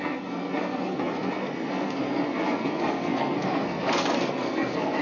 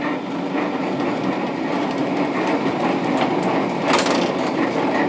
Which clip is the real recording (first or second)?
second